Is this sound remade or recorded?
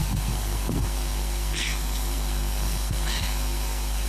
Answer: remade